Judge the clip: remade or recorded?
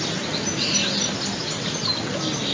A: recorded